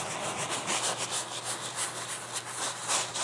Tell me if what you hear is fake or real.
real